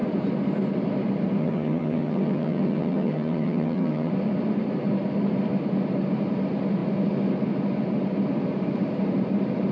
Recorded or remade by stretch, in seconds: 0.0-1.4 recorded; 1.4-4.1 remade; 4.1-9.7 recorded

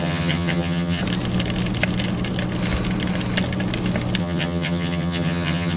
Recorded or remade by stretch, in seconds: 0.0-1.0 remade; 1.0-4.2 recorded; 4.2-5.8 remade

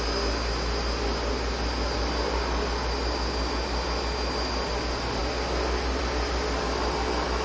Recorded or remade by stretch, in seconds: 0.0-7.4 recorded

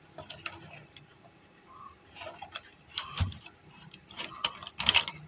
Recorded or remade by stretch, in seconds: 0.0-1.1 recorded; 1.1-4.3 remade; 4.3-5.3 recorded

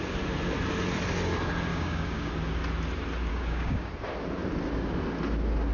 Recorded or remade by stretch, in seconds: 0.0-1.7 recorded; 1.7-2.3 remade; 2.3-3.3 recorded; 3.3-3.9 remade; 3.9-5.7 recorded

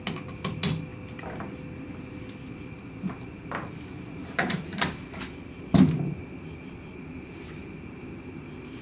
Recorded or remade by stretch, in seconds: 0.0-8.8 recorded

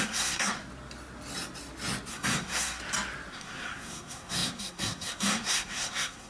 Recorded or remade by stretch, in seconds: 0.0-0.6 remade; 0.6-2.1 recorded; 2.1-2.8 remade; 2.8-3.3 recorded; 3.3-6.3 remade

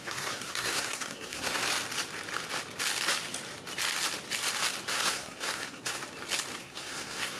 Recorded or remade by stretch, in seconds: 0.0-1.6 remade; 1.6-4.9 recorded; 4.9-6.0 remade; 6.0-6.6 recorded; 6.6-7.4 remade